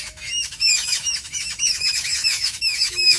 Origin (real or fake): fake